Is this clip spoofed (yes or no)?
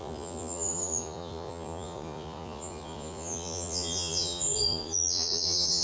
yes